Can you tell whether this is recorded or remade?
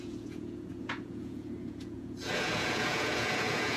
remade